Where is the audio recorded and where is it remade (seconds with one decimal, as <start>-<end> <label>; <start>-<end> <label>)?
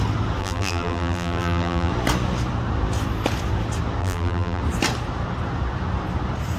0.0-0.4 recorded; 0.4-1.9 remade; 1.9-4.0 recorded; 4.0-4.6 remade; 4.6-6.6 recorded